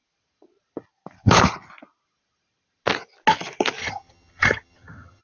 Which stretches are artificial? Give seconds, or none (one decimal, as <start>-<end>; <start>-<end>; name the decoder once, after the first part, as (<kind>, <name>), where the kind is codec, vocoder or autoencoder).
3.8-5.2 (vocoder, HiFi-GAN)